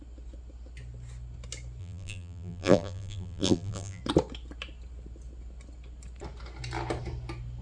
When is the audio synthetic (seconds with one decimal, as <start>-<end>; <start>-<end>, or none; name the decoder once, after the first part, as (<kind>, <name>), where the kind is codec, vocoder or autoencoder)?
1.8-4.0 (vocoder, BigVGAN v2)